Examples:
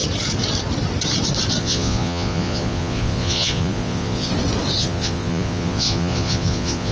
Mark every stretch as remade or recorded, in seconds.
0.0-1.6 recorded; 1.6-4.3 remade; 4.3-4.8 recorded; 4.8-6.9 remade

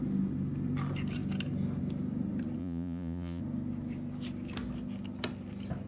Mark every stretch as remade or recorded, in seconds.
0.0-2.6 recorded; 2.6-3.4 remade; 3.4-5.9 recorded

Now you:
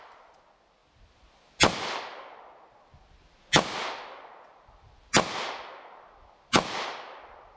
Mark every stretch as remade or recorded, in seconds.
0.0-7.6 recorded

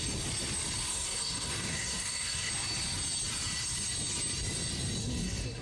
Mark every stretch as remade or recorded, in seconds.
0.0-0.9 recorded; 0.9-2.5 remade; 2.5-5.0 recorded; 5.0-5.6 remade

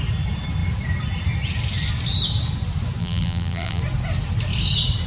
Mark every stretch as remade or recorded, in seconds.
0.0-3.0 recorded; 3.0-3.8 remade; 3.8-5.1 recorded

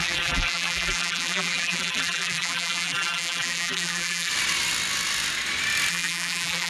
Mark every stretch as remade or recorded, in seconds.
0.0-4.3 remade; 4.3-5.9 recorded; 5.9-6.7 remade

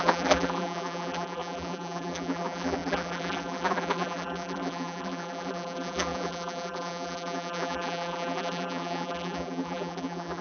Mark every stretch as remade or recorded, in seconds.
0.0-10.4 remade

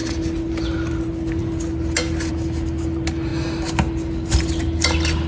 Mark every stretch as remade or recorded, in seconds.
0.0-5.3 recorded